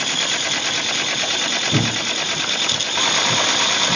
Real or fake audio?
real